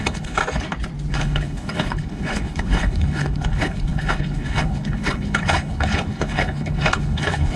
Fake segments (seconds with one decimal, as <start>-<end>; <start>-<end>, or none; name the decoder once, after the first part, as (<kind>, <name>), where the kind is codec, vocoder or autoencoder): 0.0-0.4 (codec, HILCodec); 1.1-7.6